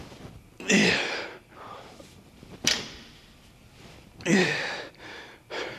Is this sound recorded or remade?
remade